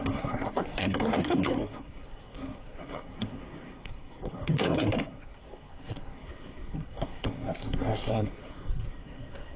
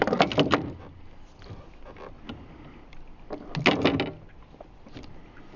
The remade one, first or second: first